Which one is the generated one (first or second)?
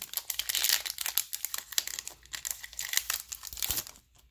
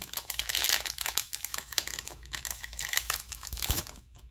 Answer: second